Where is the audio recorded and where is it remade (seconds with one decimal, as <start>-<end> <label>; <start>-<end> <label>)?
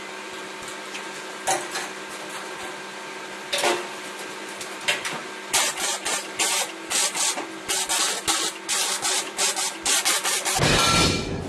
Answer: 0.0-11.5 recorded